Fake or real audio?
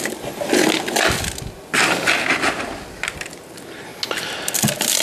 real